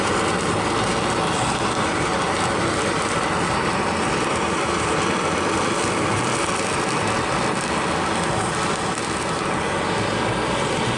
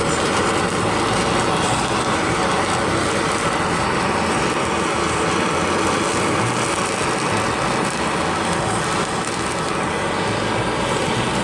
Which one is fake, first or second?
first